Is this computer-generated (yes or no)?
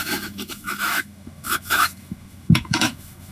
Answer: yes